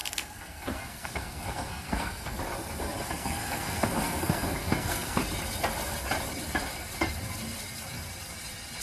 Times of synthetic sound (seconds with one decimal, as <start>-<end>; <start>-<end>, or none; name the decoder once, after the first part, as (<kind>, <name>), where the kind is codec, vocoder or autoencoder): 0.0-2.4 (codec, SNAC); 3.1-5.2